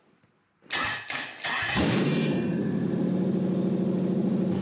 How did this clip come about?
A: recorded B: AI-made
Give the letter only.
A